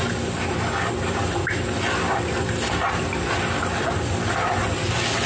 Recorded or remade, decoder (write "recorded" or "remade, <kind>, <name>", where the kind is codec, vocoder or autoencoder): recorded